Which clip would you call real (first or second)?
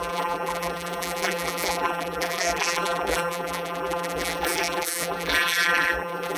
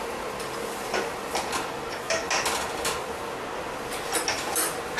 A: second